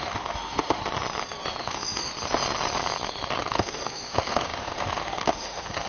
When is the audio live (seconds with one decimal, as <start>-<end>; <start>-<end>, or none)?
0.8-1.6; 2.1-3.4